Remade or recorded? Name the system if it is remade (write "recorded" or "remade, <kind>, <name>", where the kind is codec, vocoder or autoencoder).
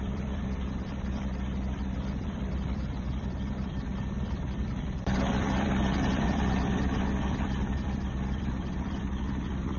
remade, vocoder, BigVGAN v2